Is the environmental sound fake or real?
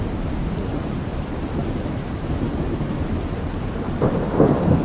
fake